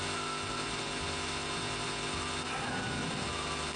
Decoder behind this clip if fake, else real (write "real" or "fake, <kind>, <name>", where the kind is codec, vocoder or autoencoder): real